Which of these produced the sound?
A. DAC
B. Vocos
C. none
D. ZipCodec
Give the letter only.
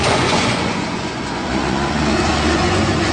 B